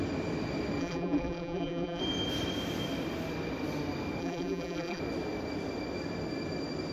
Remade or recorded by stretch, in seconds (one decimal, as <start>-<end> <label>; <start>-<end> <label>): 0.0-0.8 recorded; 0.8-2.0 remade; 2.0-4.2 recorded; 4.2-5.0 remade; 5.0-6.9 recorded